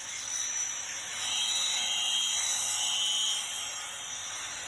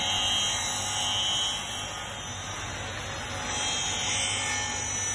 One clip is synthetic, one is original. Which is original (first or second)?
second